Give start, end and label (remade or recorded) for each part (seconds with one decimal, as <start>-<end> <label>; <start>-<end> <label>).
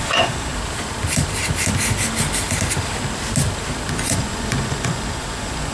0.0-0.5 remade; 0.5-3.9 recorded; 3.9-5.7 remade